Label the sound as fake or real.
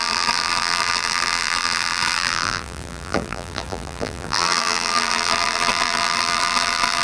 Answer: fake